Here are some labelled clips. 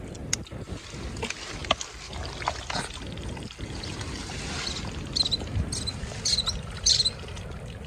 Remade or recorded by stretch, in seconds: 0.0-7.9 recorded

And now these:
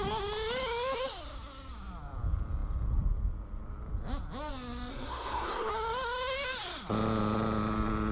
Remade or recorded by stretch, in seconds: 0.0-4.9 recorded; 4.9-5.7 remade; 5.7-8.1 recorded

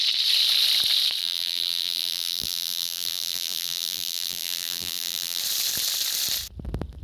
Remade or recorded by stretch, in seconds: 0.0-1.2 recorded; 1.2-5.4 remade; 5.4-7.0 recorded

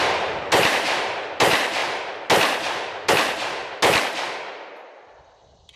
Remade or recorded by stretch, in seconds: 0.0-1.8 remade; 1.8-3.1 recorded; 3.1-3.6 remade; 3.6-5.8 recorded

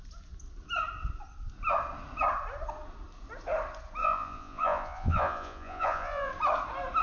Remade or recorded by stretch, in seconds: 0.0-4.0 recorded; 4.0-6.3 remade; 6.3-7.0 recorded